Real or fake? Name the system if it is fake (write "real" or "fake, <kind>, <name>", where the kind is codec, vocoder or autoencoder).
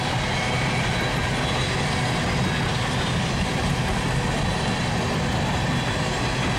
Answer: real